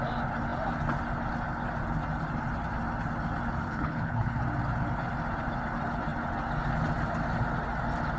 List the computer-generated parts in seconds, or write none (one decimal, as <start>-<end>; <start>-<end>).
3.6-4.4

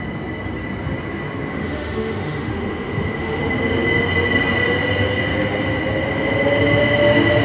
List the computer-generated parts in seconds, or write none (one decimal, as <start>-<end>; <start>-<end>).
1.5-3.4

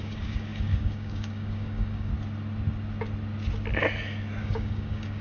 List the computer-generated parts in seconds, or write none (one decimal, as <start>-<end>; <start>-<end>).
0.0-2.1; 4.4-5.2

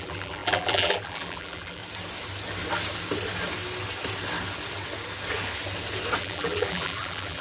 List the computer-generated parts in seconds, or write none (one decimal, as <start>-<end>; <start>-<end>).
0.0-1.8; 6.2-7.4

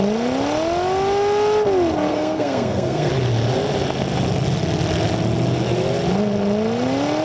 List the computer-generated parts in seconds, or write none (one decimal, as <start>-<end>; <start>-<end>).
2.1-3.1

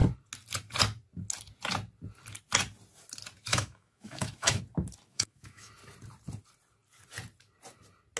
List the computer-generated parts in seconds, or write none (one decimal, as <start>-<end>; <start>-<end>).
3.5-4.6; 5.1-5.7

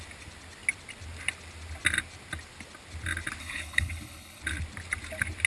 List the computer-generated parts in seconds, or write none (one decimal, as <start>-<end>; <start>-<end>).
3.4-4.4